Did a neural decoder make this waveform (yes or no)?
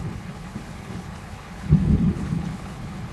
yes